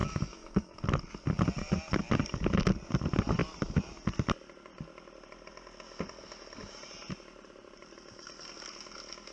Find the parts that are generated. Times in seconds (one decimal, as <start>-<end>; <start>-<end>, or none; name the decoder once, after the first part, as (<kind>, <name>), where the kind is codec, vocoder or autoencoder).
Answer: 0.0-0.8 (autoencoder, DAC-VAE)